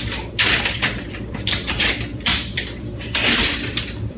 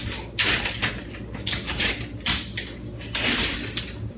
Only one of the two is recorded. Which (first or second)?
second